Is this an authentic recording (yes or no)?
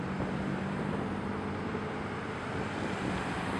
no